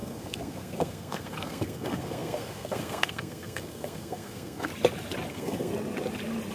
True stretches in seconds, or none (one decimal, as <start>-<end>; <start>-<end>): 4.7-5.3; 5.7-6.5